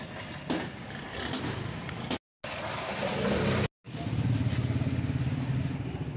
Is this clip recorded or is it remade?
recorded